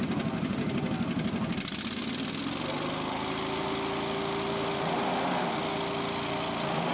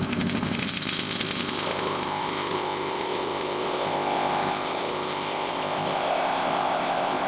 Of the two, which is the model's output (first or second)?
second